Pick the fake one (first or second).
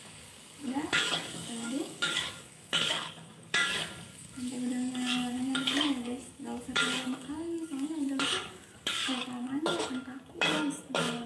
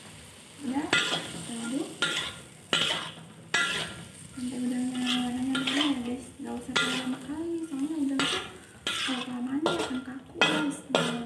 first